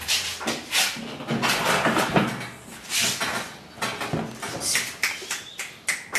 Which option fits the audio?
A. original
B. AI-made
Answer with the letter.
A